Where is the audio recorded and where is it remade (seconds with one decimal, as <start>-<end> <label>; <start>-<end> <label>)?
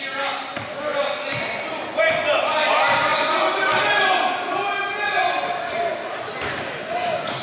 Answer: 0.0-7.4 recorded